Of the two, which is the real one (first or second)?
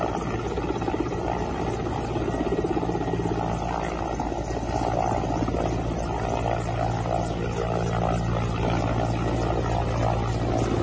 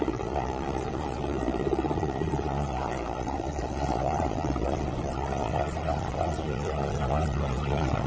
first